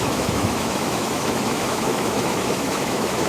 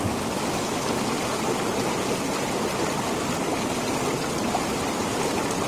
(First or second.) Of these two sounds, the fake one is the first